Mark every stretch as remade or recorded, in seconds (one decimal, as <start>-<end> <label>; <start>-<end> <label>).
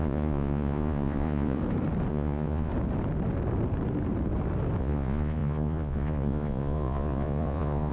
0.0-1.6 remade; 1.6-2.1 recorded; 2.1-2.7 remade; 2.7-4.8 recorded; 4.8-7.9 remade